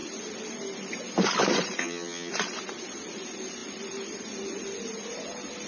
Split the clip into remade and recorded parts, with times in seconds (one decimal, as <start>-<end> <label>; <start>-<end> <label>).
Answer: 0.0-1.8 recorded; 1.8-2.3 remade; 2.3-5.7 recorded